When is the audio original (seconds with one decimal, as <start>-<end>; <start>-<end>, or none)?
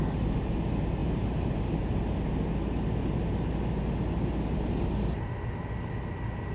0.0-1.0; 1.9-6.5